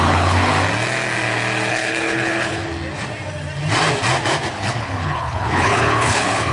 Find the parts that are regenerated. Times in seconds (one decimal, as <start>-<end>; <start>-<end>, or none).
0.0-0.5; 1.7-2.6; 4.5-6.5